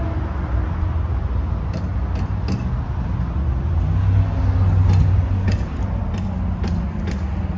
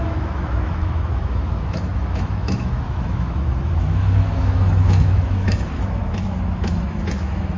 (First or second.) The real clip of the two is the first